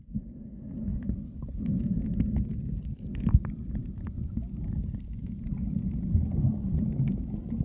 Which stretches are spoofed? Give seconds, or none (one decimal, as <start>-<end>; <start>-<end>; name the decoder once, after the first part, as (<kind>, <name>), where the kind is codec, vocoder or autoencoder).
0.9-1.8 (codec, HILCodec)